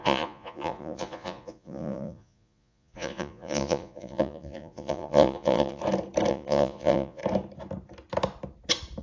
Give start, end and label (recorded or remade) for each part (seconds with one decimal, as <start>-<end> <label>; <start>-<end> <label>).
0.0-5.8 remade; 5.8-6.3 recorded; 6.3-7.2 remade; 7.2-9.0 recorded

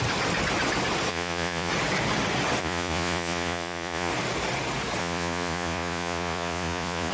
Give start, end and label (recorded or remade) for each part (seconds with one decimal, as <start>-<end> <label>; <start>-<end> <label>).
0.0-1.1 recorded; 1.1-1.7 remade; 1.7-2.6 recorded; 2.6-4.1 remade; 4.1-5.0 recorded; 5.0-7.1 remade

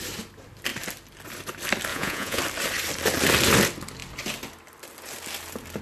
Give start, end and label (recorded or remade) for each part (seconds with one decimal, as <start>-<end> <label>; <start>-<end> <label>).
0.0-1.9 recorded; 1.9-2.4 remade; 2.4-5.8 recorded

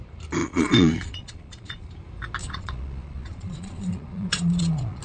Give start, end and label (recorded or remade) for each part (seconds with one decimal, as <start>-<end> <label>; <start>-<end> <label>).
0.0-0.4 recorded; 0.4-1.9 remade; 1.9-2.4 recorded; 2.4-5.0 remade

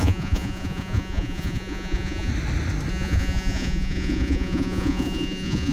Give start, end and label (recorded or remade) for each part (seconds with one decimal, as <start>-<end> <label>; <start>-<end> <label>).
0.0-2.3 remade; 2.3-2.9 recorded; 2.9-5.7 remade

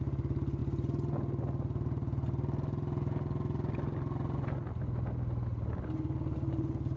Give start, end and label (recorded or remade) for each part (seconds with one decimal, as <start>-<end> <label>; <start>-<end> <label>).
0.0-7.0 recorded